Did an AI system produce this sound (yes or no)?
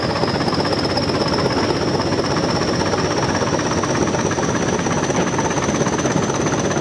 no